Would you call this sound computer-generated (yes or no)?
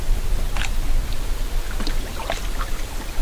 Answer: no